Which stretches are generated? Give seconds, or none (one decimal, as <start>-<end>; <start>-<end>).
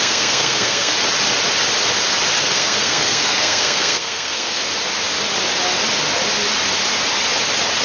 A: 0.0-0.9; 2.4-4.6